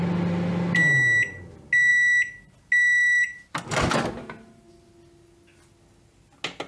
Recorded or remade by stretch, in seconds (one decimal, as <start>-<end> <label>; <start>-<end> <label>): 0.0-6.7 recorded